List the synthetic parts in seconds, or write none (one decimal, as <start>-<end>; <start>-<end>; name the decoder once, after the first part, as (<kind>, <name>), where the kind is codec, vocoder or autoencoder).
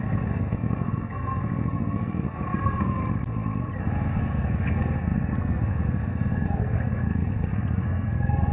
0.0-3.0 (codec, SNAC); 3.8-8.5